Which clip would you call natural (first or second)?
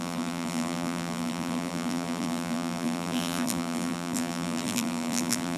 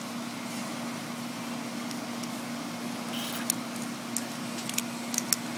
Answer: second